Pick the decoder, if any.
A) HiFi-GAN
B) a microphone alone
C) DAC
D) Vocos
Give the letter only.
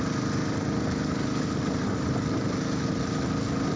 B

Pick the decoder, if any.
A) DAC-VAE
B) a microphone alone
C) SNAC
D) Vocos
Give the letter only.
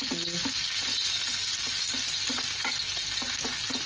B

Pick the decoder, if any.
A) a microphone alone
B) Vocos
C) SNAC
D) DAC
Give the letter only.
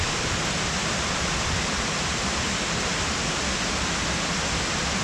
A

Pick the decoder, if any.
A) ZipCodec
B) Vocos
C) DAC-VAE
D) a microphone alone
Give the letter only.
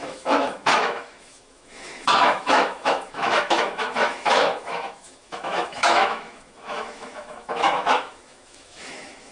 C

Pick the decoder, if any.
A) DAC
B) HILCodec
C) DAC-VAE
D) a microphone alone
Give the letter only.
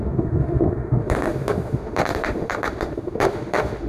C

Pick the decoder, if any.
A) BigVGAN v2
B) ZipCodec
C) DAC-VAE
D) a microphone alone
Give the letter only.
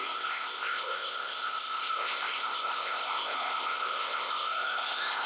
B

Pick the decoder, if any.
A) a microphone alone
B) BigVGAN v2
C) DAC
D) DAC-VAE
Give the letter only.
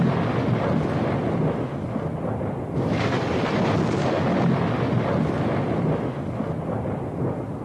A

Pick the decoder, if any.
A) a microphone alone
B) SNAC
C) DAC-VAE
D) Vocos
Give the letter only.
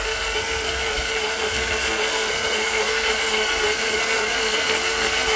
B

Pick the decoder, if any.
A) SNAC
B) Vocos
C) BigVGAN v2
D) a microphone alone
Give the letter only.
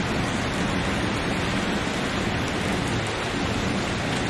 D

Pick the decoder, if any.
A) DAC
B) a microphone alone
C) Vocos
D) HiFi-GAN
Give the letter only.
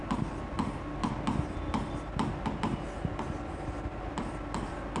B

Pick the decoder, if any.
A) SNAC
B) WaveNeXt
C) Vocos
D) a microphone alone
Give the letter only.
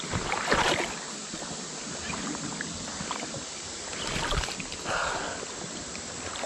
D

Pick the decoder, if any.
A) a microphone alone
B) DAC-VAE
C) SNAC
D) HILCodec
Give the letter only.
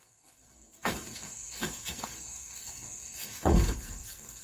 C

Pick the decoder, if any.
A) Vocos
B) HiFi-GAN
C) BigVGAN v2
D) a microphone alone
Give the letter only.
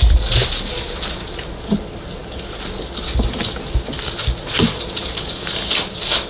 D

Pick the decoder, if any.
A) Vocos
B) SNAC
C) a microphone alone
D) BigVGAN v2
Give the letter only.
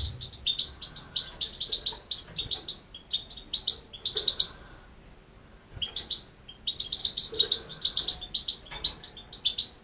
C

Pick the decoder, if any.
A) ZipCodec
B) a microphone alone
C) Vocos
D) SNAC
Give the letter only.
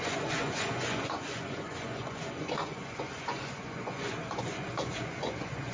C